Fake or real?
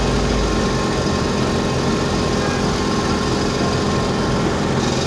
real